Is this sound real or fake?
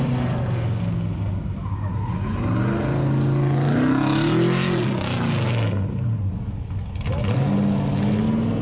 real